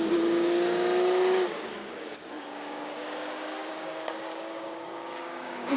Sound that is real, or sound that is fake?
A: fake